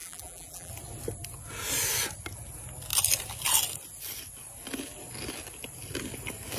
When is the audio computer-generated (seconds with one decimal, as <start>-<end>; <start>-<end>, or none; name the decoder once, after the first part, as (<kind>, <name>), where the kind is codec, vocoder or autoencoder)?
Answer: 0.0-0.7 (vocoder, BigVGAN v2)